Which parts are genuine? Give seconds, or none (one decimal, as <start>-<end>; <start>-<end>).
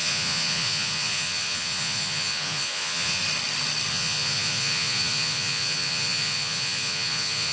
3.2-3.9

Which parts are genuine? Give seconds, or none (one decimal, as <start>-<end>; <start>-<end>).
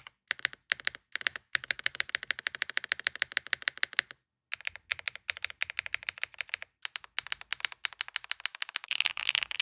0.0-1.3; 2.1-8.5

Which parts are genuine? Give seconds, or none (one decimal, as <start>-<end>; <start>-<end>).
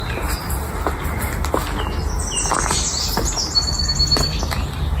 0.0-5.0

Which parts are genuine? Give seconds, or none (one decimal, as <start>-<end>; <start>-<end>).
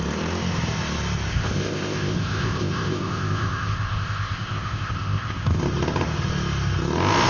0.0-1.3; 5.6-7.3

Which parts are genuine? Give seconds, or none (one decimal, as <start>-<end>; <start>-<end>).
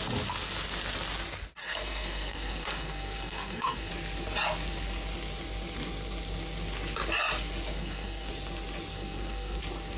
0.0-1.6; 3.9-7.7; 8.3-8.9; 9.6-10.0